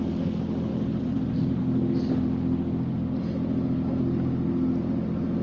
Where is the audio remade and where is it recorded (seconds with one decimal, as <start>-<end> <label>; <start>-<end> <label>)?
0.0-0.7 recorded; 0.7-1.6 remade; 1.6-5.4 recorded